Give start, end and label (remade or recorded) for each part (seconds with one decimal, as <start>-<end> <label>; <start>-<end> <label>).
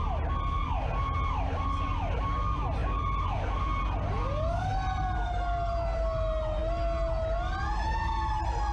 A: 0.0-8.7 recorded